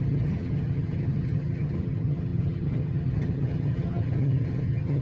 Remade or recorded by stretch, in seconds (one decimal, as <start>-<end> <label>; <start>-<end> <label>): 0.0-5.0 remade